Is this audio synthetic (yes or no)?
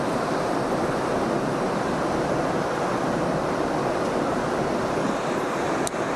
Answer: no